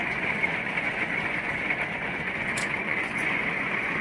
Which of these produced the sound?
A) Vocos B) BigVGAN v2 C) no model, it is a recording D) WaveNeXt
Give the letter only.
A